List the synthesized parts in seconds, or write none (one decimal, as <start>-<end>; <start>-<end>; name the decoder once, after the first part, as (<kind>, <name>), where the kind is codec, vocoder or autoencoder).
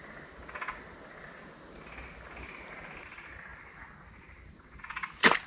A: none